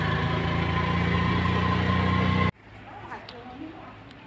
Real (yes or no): yes